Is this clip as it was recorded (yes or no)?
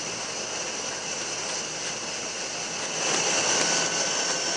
yes